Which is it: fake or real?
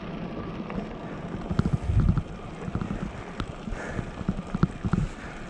real